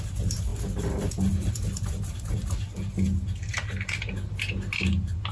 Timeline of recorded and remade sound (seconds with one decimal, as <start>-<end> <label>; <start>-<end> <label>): 0.0-5.3 recorded